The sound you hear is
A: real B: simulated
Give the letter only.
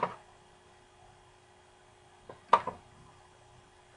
A